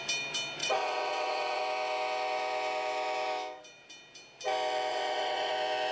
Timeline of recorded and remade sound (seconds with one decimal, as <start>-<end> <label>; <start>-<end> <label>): 0.0-0.6 recorded; 0.6-1.6 remade; 1.6-4.9 recorded; 4.9-5.5 remade; 5.5-5.9 recorded